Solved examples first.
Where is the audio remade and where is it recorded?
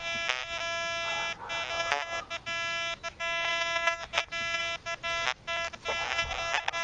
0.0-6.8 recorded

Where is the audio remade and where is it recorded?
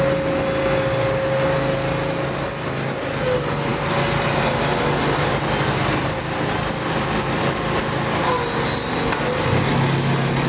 0.0-10.5 recorded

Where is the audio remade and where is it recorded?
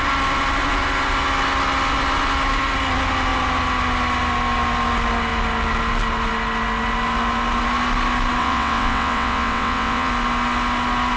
0.0-8.4 recorded; 8.4-10.1 remade; 10.1-11.2 recorded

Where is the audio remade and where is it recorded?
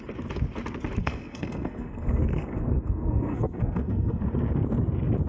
0.0-1.0 recorded; 1.0-4.2 remade; 4.2-5.3 recorded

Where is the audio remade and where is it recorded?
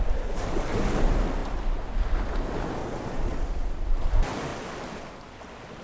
0.0-2.8 recorded; 2.8-3.8 remade; 3.8-5.8 recorded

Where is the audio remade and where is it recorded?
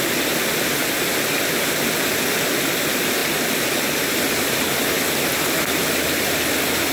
0.0-6.9 recorded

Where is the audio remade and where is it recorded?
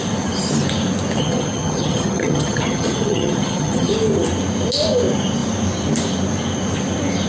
0.0-1.2 recorded; 1.2-3.9 remade; 3.9-7.3 recorded